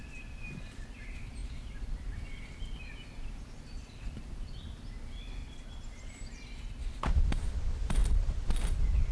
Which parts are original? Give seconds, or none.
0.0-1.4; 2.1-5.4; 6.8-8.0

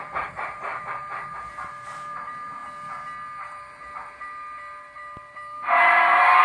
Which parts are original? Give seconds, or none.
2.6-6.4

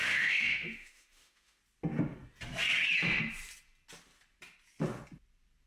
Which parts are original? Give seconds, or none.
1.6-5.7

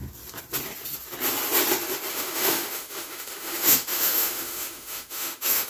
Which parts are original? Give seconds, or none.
0.0-2.1